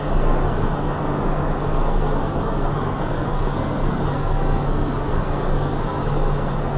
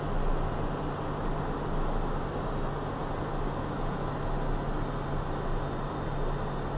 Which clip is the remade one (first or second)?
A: first